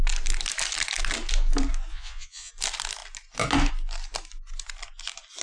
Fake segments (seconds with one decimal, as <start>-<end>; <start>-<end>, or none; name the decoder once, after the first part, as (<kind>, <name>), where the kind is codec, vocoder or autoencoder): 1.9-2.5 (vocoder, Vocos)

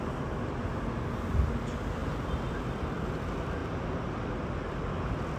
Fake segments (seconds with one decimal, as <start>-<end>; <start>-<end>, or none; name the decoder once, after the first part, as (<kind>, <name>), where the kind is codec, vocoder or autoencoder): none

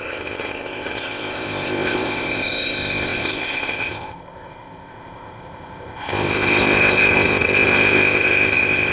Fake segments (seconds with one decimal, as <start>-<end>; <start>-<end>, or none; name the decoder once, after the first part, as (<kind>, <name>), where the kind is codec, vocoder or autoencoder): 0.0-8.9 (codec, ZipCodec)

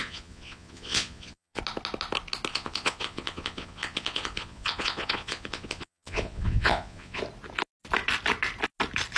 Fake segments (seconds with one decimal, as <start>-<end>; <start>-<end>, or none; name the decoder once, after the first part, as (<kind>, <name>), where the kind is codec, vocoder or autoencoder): 0.0-1.6 (vocoder, Vocos); 2.5-7.2

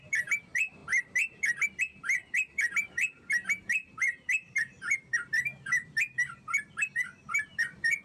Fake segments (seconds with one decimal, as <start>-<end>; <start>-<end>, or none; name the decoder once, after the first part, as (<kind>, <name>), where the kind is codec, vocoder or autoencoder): 0.0-8.0 (vocoder, BigVGAN v2)

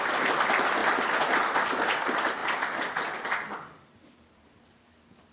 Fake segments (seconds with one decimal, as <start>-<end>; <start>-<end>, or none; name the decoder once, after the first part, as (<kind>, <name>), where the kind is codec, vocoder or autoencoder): 0.8-1.9 (vocoder, BigVGAN v2); 2.4-4.8

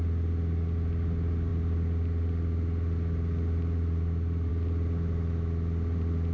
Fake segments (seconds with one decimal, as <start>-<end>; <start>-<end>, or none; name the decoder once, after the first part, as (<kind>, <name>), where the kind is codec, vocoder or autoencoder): none